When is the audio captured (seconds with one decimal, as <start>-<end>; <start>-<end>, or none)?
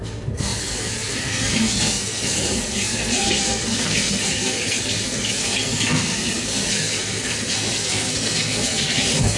none